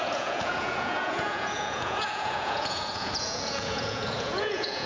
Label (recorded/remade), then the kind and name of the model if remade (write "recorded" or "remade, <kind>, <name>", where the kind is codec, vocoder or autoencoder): remade, vocoder, Vocos